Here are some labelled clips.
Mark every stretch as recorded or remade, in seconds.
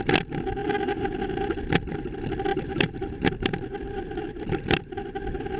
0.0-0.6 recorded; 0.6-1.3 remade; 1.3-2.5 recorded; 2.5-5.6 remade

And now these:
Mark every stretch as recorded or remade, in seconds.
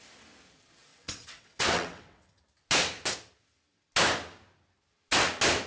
0.0-0.9 recorded; 0.9-2.4 remade; 2.4-5.7 recorded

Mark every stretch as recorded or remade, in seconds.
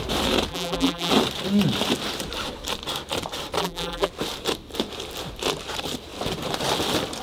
0.0-0.5 recorded; 0.5-1.1 remade; 1.1-3.6 recorded; 3.6-4.1 remade; 4.1-7.2 recorded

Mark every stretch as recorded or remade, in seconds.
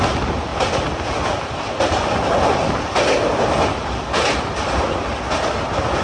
0.0-6.0 recorded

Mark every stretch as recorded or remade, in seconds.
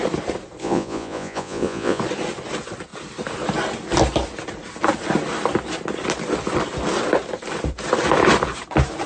0.0-0.6 recorded; 0.6-2.0 remade; 2.0-9.1 recorded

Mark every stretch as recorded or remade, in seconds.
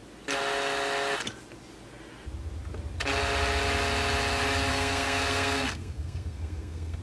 0.0-4.7 recorded; 4.7-7.0 remade